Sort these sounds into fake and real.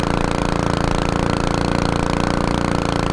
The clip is real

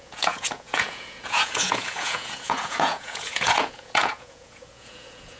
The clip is fake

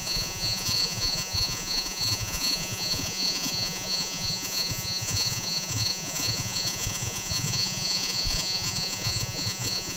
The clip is fake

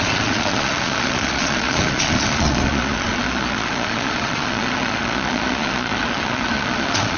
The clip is fake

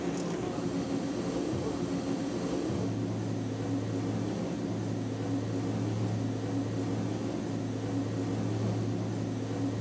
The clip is real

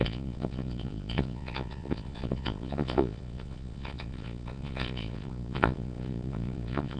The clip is fake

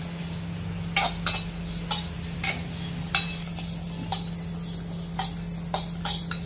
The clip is real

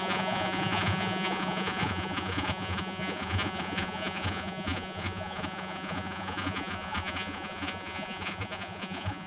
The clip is fake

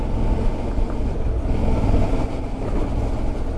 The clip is real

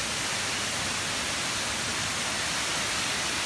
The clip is real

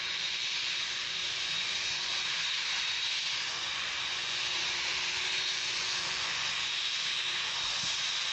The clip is fake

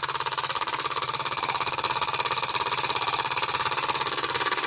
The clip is real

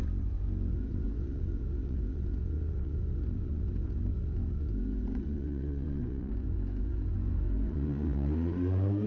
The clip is fake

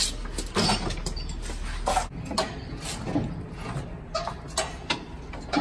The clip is real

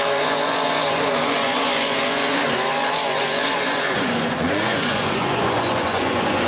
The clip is fake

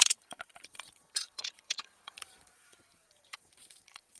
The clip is fake